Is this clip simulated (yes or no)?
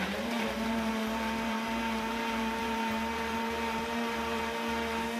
yes